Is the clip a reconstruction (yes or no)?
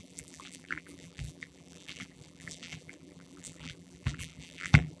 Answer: yes